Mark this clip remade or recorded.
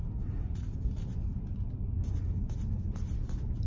recorded